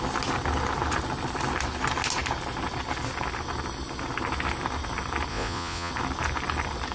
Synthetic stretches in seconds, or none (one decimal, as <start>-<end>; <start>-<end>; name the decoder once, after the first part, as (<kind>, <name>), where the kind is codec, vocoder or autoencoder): 5.3-5.9 (vocoder, Vocos)